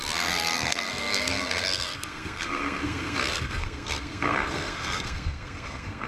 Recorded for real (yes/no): no